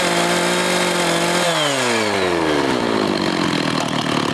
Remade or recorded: recorded